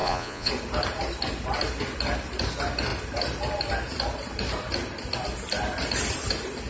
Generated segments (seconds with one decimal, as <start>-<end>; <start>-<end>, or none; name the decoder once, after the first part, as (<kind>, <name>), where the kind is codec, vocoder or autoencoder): 0.0-0.5 (vocoder, Vocos)